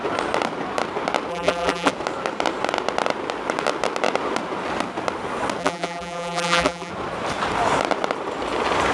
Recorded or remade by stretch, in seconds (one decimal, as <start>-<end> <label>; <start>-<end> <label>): 0.0-1.3 recorded; 1.3-1.9 remade; 1.9-5.6 recorded; 5.6-6.9 remade; 6.9-8.9 recorded

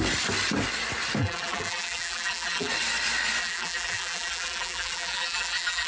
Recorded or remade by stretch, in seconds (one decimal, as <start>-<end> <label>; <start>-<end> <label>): 0.0-1.2 recorded; 1.2-2.7 remade; 2.7-3.4 recorded; 3.4-5.9 remade